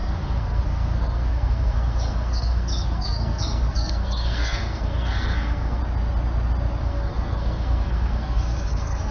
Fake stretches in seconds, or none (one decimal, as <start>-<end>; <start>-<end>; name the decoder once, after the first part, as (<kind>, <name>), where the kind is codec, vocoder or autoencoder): 0.0-5.8 (codec, SNAC); 6.8-9.1